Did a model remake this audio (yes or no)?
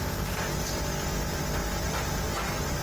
no